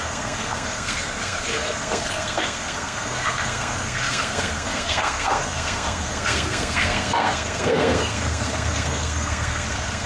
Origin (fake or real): fake